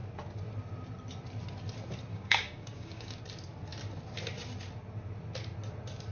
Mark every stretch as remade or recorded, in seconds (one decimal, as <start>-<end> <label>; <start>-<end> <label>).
0.0-2.1 recorded; 2.1-3.2 remade; 3.2-6.1 recorded